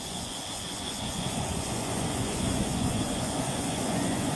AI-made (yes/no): yes